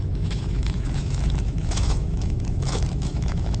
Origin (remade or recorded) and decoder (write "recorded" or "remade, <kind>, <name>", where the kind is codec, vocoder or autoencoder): remade, autoencoder, DAC-VAE